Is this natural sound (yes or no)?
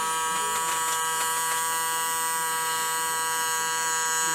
yes